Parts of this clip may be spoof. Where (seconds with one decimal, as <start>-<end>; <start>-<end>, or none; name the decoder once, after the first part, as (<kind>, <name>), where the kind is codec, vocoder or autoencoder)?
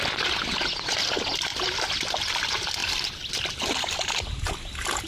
0.0-2.8 (vocoder, BigVGAN v2); 3.6-5.1